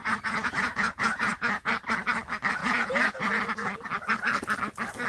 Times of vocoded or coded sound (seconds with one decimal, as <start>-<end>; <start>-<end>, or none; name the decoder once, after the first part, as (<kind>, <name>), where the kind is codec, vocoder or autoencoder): 0.0-1.7 (vocoder, Vocos); 2.6-3.4